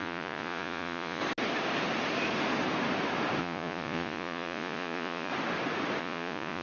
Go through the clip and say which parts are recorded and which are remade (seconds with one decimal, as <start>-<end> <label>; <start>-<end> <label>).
0.0-1.2 remade; 1.2-3.4 recorded; 3.4-5.3 remade; 5.3-6.0 recorded; 6.0-6.6 remade